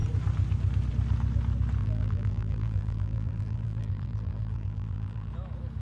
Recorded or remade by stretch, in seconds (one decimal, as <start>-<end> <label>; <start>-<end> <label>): 0.0-1.8 recorded; 1.8-5.3 remade; 5.3-5.8 recorded